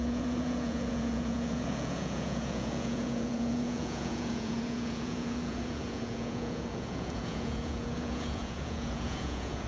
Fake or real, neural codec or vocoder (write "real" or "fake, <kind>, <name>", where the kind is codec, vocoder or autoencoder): fake, vocoder, Vocos